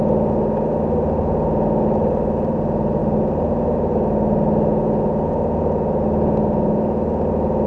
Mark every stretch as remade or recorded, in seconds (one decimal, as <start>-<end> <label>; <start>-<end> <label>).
0.0-7.7 recorded

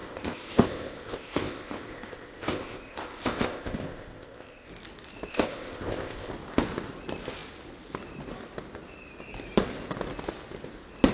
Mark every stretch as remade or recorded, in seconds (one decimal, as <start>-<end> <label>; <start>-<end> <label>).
0.0-4.7 remade; 4.7-5.3 recorded; 5.3-6.3 remade; 6.3-11.1 recorded